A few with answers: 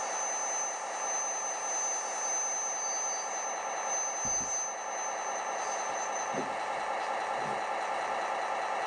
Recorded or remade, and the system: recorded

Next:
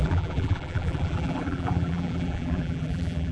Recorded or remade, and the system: remade, vocoder, BigVGAN v2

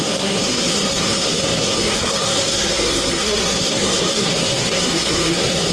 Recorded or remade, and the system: remade, codec, SNAC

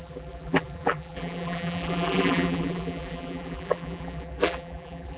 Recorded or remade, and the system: remade, vocoder, BigVGAN v2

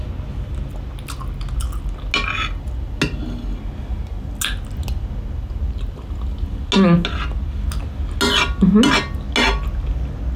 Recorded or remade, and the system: recorded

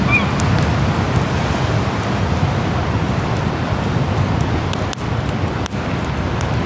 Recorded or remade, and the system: recorded